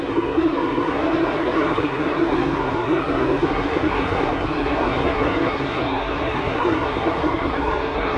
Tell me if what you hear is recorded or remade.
remade